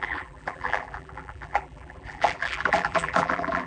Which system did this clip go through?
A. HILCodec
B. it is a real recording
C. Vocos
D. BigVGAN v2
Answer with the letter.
D